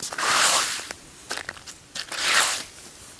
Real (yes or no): yes